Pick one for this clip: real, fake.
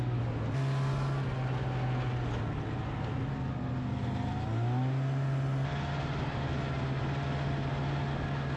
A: real